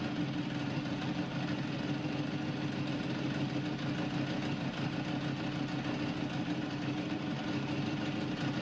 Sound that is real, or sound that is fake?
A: real